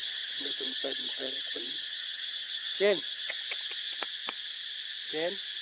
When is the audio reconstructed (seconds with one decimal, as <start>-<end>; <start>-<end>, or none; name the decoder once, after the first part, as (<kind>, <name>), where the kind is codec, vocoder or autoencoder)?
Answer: 0.0-3.4 (vocoder, HiFi-GAN)